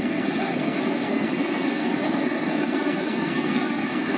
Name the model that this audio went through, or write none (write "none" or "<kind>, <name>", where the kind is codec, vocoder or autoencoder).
codec, SNAC